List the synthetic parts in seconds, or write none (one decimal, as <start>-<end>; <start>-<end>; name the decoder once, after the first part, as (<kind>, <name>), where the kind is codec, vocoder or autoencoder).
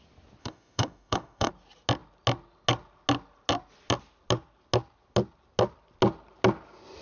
0.4-1.5 (autoencoder, DAC-VAE)